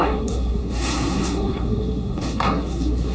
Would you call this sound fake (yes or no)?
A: yes